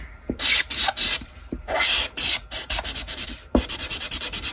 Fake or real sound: fake